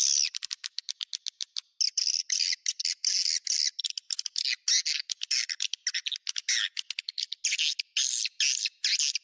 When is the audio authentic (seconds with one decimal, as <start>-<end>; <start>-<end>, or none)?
0.0-9.2